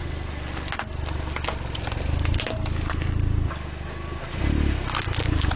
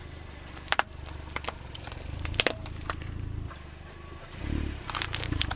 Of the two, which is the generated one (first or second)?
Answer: second